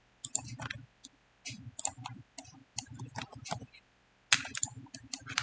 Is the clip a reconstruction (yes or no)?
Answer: no